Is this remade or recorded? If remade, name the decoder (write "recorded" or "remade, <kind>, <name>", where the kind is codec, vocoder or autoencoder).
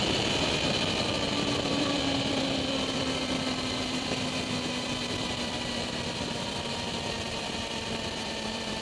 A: remade, vocoder, BigVGAN v2